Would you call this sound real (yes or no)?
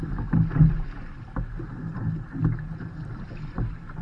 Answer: yes